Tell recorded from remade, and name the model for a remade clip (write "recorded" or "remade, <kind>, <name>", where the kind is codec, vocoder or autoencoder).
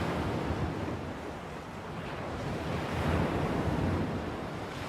recorded